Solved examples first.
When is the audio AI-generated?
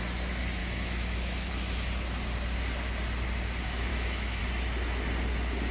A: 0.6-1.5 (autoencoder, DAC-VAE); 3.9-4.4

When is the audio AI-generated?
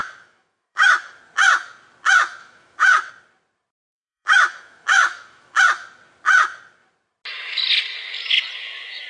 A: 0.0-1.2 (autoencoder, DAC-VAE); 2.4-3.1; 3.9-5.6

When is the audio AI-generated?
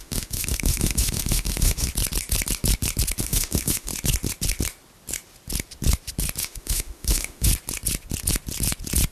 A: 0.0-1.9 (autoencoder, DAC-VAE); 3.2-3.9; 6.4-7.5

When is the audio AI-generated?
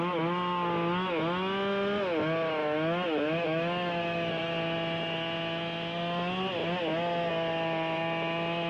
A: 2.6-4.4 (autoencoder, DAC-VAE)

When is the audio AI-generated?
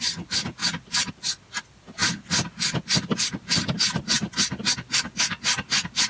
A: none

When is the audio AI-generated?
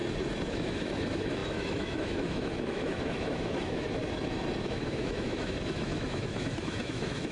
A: 0.5-4.0 (autoencoder, DAC-VAE); 4.6-7.3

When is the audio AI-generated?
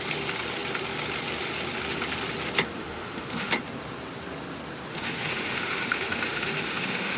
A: 2.8-3.5 (autoencoder, DAC-VAE); 4.9-7.2